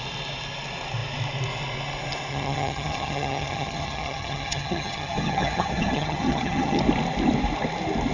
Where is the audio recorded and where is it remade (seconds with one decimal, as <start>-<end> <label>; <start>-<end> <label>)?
0.0-2.3 recorded; 2.3-6.8 remade; 6.8-8.1 recorded